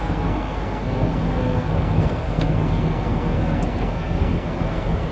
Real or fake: fake